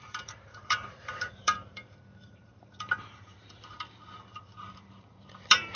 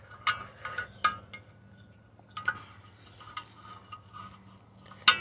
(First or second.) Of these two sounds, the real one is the second